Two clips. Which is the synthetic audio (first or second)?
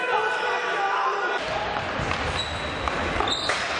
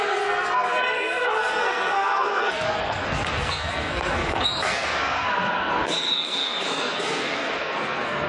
second